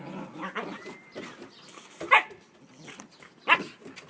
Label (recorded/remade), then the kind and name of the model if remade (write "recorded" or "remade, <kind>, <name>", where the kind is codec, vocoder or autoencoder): recorded